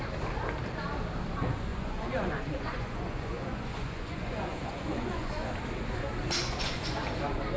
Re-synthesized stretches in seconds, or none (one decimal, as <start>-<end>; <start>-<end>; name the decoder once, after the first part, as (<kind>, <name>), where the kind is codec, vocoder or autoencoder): 1.7-5.5 (vocoder, Vocos); 6.4-7.0

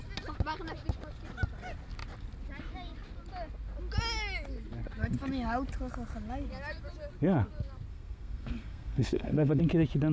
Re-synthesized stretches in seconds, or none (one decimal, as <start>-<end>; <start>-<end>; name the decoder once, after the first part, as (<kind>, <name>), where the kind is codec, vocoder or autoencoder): 7.9-9.6 (codec, SNAC)

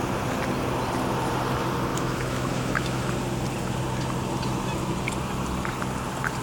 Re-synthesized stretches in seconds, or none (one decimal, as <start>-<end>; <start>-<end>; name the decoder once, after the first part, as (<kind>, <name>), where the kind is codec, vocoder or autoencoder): 1.9-3.0 (autoencoder, DAC-VAE)

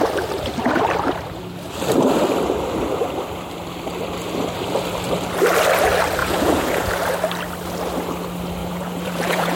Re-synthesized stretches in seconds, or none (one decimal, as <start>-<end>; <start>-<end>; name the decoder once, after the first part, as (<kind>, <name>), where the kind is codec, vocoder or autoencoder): 6.2-6.9 (vocoder, Vocos); 8.6-9.6

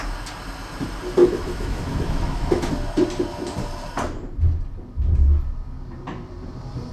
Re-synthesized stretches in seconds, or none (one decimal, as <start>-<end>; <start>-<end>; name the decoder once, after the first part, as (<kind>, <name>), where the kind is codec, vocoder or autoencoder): 1.2-2.7 (autoencoder, DAC-VAE)

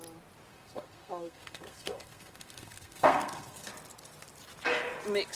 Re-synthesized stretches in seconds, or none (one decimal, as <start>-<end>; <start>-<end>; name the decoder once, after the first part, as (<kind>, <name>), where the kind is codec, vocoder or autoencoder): 0.5-3.7 (codec, SNAC)